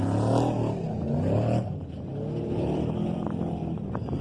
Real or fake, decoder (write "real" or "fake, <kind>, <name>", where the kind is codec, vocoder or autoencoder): real